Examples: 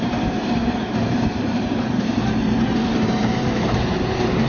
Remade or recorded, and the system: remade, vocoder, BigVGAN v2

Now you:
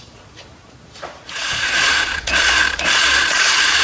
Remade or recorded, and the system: remade, vocoder, Vocos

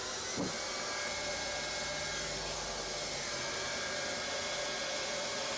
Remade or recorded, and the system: recorded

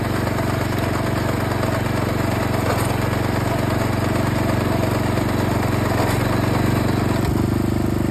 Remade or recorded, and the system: recorded